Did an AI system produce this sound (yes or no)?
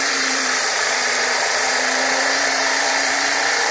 yes